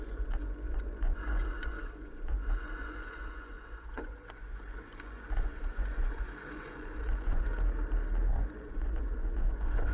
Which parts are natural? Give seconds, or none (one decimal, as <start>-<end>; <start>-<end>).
7.5-8.3